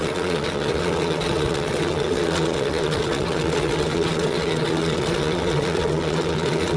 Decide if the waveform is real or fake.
fake